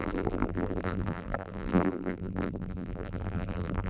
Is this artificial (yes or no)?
yes